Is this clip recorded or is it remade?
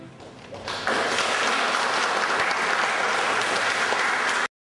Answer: recorded